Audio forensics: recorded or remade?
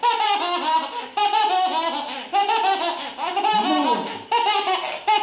recorded